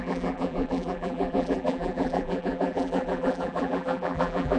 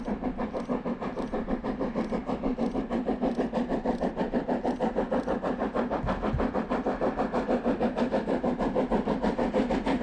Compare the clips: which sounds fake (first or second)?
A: first